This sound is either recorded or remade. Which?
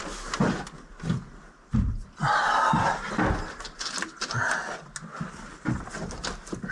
recorded